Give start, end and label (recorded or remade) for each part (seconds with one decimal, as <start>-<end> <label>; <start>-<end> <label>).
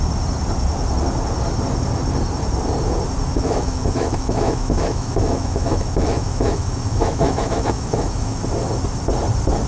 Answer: 0.0-3.3 recorded; 3.3-8.4 remade; 8.4-9.7 recorded